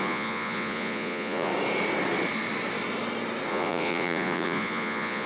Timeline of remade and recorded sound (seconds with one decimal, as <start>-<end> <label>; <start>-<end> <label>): 0.0-1.5 remade; 1.5-3.5 recorded; 3.5-5.3 remade